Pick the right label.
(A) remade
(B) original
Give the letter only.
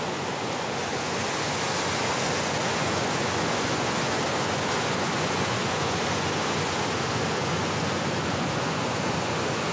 A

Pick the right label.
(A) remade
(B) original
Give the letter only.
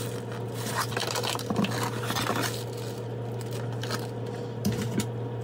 B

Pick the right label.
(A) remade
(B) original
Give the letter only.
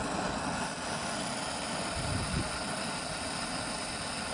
B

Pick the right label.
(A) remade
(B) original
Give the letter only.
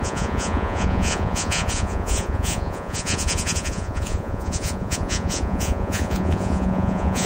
A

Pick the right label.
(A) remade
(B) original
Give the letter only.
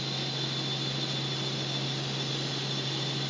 B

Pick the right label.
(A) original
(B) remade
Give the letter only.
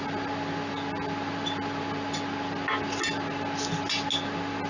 A